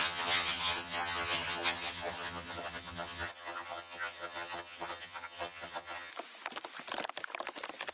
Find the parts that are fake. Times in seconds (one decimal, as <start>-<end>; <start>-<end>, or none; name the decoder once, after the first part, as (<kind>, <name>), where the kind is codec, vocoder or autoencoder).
0.0-6.1 (vocoder, HiFi-GAN)